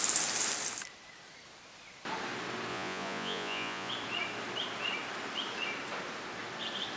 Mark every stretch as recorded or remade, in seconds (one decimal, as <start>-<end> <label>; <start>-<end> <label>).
0.0-2.7 recorded; 2.7-3.9 remade; 3.9-7.0 recorded